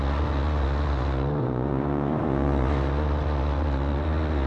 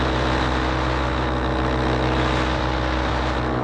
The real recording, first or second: second